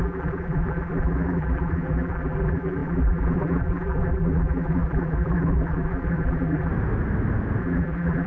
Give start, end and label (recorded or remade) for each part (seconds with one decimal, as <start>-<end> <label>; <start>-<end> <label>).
0.0-6.7 remade; 6.7-7.6 recorded; 7.6-8.3 remade